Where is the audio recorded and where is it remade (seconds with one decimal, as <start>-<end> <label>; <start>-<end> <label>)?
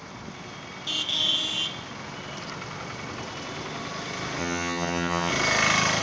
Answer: 0.0-4.4 recorded; 4.4-5.3 remade; 5.3-6.0 recorded